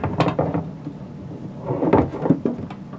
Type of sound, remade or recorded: recorded